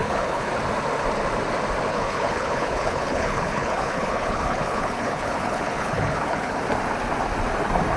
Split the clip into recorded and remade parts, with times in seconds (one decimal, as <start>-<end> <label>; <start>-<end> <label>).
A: 0.0-0.5 remade; 0.5-1.9 recorded; 1.9-6.6 remade; 6.6-8.0 recorded